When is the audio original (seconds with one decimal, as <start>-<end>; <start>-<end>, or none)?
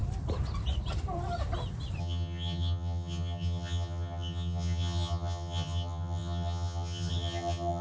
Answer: 0.0-2.0